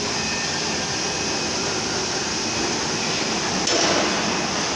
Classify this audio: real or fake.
real